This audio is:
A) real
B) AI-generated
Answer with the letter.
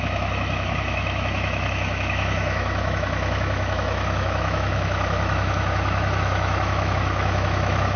B